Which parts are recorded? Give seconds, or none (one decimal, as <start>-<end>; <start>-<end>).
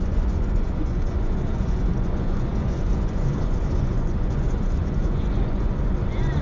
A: none